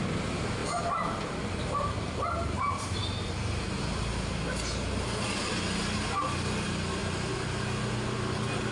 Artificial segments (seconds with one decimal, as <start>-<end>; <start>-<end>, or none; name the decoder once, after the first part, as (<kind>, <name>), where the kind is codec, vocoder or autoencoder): 0.6-5.5 (vocoder, BigVGAN v2)